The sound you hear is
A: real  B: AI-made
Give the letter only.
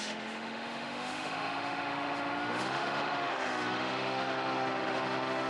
B